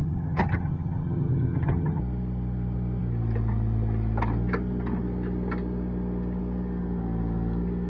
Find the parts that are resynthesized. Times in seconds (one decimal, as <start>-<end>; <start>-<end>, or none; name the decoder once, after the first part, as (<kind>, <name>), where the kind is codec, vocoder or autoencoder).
0.0-2.0 (vocoder, HiFi-GAN)